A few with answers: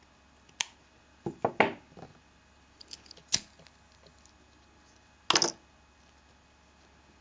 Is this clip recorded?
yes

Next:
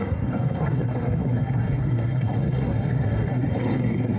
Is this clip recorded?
no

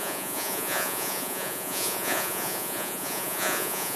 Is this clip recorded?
no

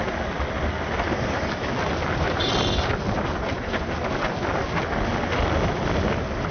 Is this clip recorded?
yes